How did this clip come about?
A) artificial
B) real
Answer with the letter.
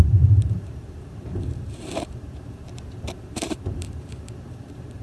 A